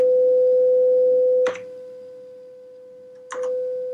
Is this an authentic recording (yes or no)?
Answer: yes